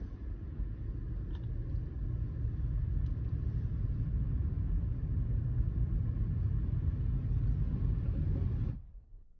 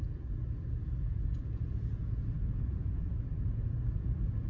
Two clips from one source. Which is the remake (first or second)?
second